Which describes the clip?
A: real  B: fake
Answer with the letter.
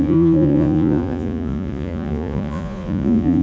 B